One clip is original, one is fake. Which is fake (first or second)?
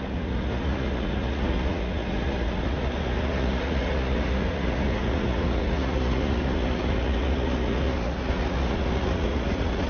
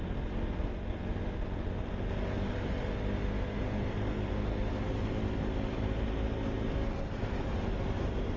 first